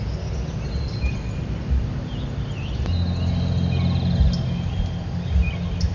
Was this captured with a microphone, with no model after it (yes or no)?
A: yes